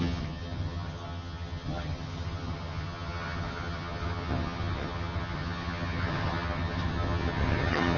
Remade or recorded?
remade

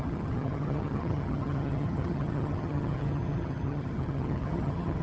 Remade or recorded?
remade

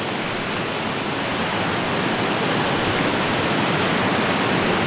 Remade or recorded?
recorded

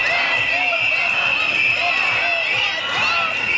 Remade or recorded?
recorded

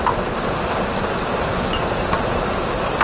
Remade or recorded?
recorded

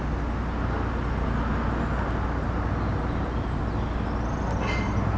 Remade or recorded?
recorded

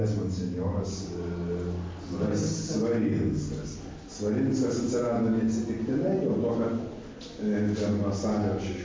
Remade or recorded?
recorded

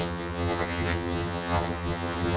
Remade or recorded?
remade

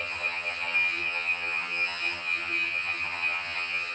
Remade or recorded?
remade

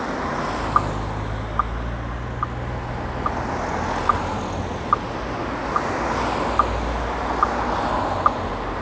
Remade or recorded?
recorded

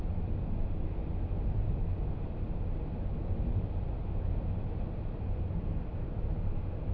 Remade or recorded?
recorded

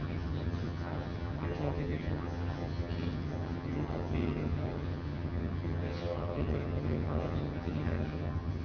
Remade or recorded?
remade